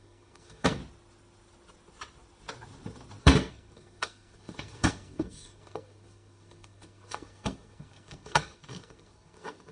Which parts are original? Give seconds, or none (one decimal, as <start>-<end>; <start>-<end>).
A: 0.8-3.2